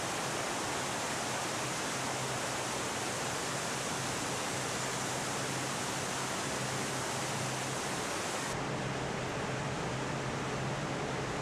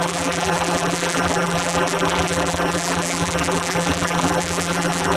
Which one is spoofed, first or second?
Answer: second